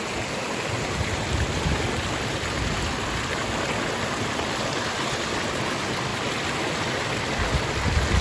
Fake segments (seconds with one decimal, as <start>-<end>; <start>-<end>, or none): none